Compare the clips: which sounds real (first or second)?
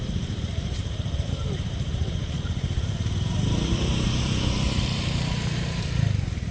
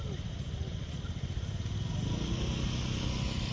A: second